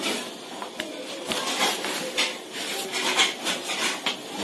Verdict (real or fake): real